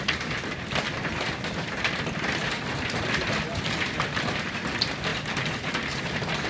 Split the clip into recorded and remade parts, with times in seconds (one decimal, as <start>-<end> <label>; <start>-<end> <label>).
0.0-5.1 remade; 5.1-6.1 recorded; 6.1-6.5 remade